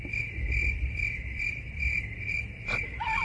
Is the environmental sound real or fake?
real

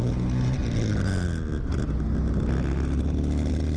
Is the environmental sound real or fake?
real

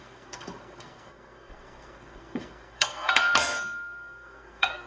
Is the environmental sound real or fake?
fake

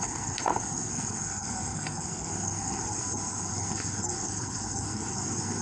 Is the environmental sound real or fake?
fake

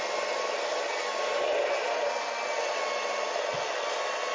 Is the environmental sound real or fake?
real